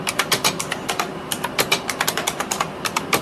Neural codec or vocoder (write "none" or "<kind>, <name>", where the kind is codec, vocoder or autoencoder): none